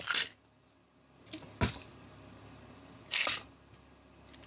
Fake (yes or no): no